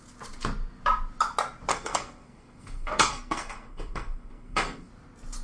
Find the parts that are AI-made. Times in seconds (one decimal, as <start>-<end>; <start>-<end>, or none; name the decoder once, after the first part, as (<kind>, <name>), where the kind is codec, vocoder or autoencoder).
1.7-4.9 (codec, SNAC)

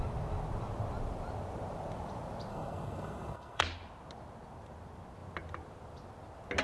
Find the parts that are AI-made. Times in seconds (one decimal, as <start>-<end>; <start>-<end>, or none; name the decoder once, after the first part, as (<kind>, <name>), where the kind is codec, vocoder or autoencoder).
2.5-3.6 (codec, SNAC)

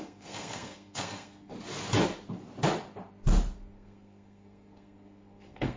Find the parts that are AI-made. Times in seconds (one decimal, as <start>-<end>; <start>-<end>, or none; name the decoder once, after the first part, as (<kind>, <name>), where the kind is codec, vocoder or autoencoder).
0.0-1.5 (codec, SNAC); 3.7-5.8

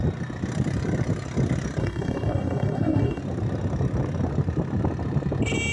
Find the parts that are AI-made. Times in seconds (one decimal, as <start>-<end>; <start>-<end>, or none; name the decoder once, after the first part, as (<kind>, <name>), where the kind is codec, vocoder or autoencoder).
1.8-3.2 (codec, SNAC)

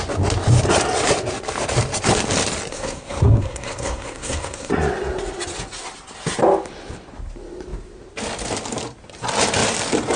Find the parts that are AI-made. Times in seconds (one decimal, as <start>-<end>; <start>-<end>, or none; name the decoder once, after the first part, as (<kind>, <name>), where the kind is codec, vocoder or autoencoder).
2.7-4.7 (codec, SNAC)

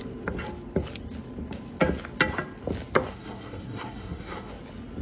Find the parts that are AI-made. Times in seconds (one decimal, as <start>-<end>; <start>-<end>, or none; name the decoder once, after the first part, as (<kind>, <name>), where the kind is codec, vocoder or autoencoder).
3.1-4.5 (codec, SNAC)

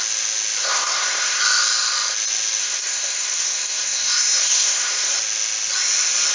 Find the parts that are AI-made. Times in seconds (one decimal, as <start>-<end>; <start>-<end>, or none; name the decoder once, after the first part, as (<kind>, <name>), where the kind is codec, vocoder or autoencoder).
0.6-1.4 (codec, SNAC); 2.6-5.1